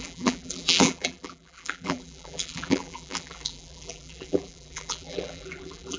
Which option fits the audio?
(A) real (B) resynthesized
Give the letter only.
B